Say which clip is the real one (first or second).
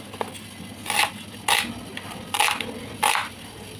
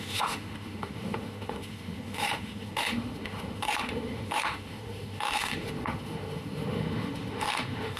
first